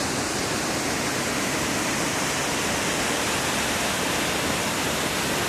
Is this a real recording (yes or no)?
yes